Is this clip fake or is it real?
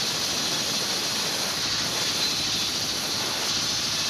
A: real